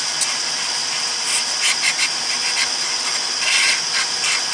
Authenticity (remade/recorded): recorded